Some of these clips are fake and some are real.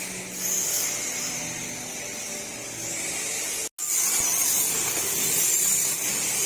real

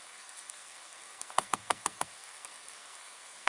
fake